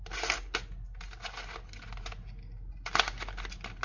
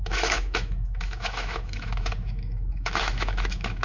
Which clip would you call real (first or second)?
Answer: first